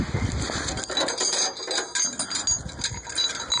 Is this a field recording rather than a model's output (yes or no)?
yes